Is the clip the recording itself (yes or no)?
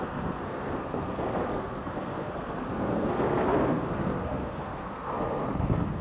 no